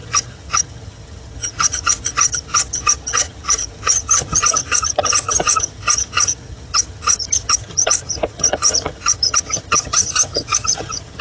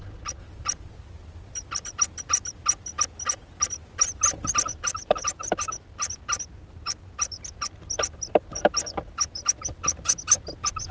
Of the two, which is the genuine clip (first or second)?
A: second